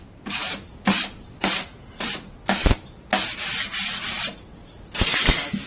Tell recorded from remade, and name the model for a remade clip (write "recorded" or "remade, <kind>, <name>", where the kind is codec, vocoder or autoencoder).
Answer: recorded